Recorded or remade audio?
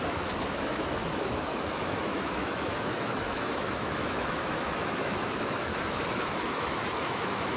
remade